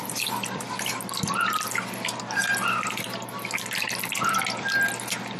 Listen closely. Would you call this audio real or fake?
real